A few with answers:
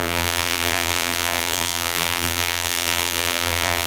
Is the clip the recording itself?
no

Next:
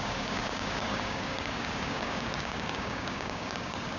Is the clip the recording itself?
no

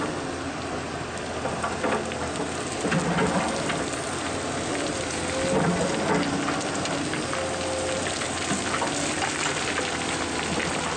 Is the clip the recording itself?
yes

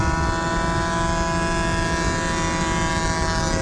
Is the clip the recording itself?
yes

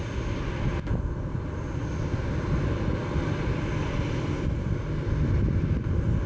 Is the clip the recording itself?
yes